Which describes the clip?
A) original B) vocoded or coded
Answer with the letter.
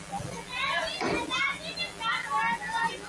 A